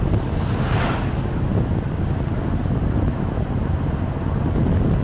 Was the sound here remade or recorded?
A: recorded